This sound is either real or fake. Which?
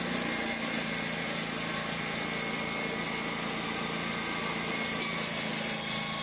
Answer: real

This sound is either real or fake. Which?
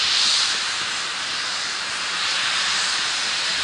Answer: fake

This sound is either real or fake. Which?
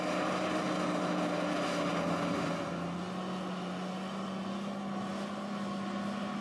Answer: real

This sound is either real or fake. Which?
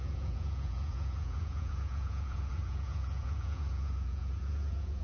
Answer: fake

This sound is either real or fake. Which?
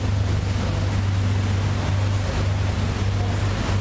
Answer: real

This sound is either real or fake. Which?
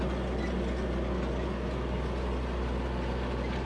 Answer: real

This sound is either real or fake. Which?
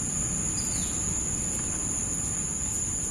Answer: real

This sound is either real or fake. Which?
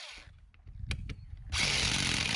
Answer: real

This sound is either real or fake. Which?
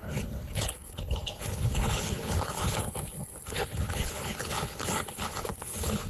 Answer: fake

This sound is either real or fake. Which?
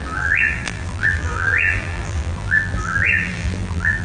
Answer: fake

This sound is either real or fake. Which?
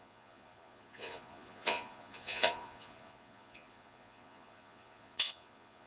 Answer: fake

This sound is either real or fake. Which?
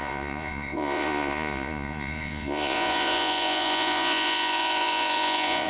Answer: fake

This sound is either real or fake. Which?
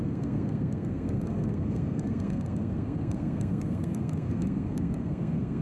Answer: fake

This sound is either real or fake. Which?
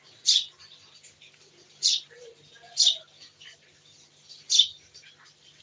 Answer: real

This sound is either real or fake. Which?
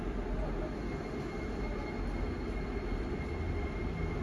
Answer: real